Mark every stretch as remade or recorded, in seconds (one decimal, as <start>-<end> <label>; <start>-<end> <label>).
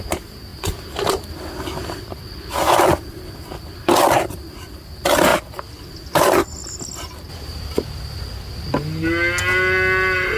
0.0-0.5 recorded; 0.5-4.4 remade; 4.4-5.3 recorded; 5.3-5.8 remade; 5.8-10.4 recorded